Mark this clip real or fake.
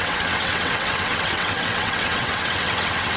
fake